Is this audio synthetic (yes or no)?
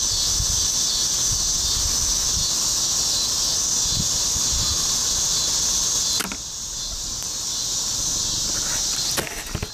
no